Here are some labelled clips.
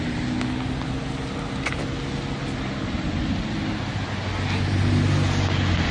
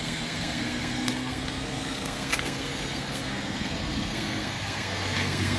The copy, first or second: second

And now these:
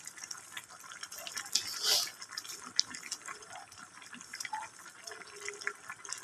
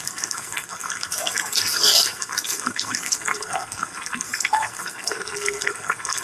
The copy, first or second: second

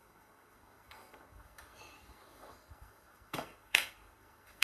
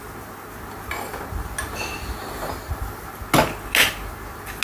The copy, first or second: first